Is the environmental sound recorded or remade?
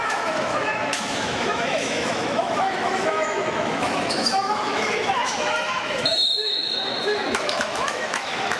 remade